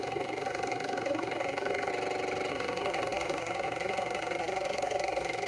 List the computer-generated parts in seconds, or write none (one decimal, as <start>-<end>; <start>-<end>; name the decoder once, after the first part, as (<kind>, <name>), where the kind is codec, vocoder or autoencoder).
0.0-1.9 (codec, SNAC); 2.5-5.5